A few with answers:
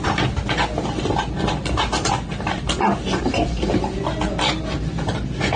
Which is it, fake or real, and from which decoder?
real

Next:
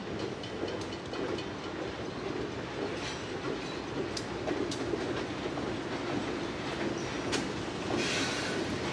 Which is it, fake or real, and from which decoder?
real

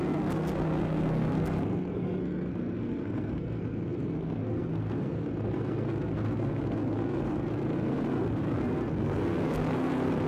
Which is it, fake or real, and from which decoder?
fake, codec, SNAC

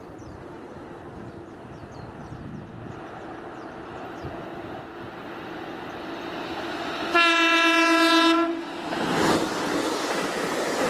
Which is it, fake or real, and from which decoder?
real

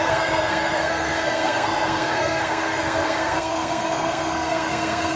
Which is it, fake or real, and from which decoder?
fake, codec, SNAC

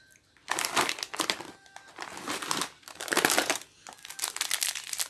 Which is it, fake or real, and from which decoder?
real